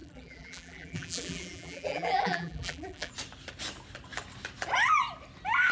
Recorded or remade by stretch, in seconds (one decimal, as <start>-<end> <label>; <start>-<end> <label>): 0.0-3.1 remade; 3.1-5.7 recorded